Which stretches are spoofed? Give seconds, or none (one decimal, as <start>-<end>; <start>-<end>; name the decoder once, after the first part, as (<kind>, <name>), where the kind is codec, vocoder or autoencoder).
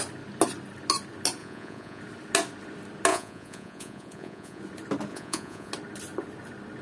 1.4-2.0 (vocoder, Vocos); 3.1-4.6; 5.1-5.7